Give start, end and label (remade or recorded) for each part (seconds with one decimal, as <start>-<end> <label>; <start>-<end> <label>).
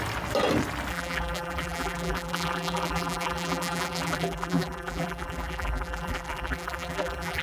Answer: 0.0-0.9 recorded; 0.9-7.4 remade